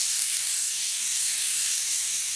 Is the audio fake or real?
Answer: fake